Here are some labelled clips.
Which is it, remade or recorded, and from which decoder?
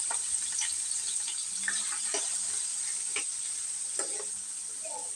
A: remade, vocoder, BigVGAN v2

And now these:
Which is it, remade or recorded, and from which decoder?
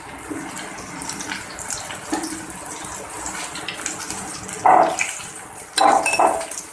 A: recorded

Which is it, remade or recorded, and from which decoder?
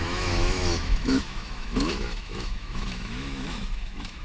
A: remade, autoencoder, DAC-VAE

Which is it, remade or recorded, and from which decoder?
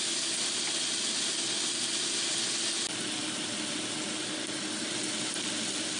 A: recorded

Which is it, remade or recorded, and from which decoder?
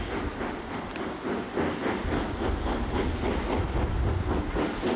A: recorded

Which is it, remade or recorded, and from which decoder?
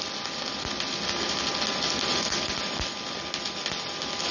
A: recorded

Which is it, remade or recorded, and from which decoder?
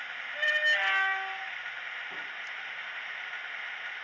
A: recorded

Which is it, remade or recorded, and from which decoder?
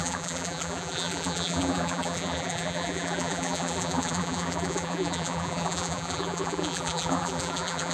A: remade, vocoder, BigVGAN v2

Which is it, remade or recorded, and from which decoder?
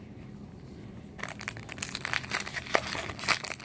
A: recorded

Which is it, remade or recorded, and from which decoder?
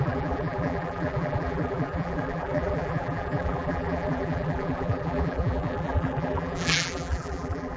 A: remade, vocoder, BigVGAN v2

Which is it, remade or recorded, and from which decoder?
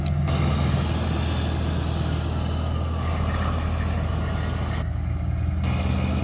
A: recorded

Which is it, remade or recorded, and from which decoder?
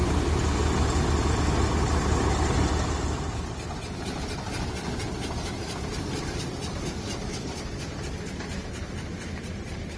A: recorded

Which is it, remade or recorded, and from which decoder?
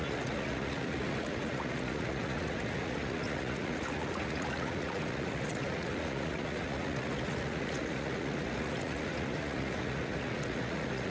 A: remade, vocoder, Vocos